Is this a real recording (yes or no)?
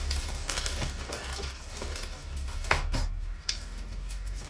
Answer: no